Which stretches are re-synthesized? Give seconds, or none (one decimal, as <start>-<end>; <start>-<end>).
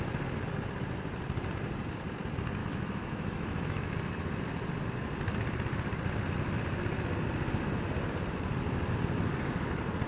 2.6-3.9